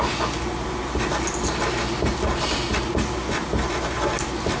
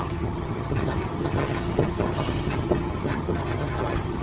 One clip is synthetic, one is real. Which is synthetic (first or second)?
second